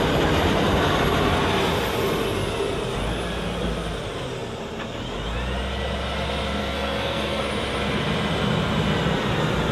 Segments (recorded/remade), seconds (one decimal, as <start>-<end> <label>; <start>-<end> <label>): 0.0-6.6 recorded; 6.6-7.4 remade; 7.4-9.7 recorded